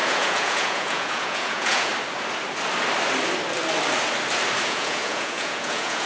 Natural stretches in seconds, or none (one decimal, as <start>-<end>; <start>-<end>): 1.9-4.6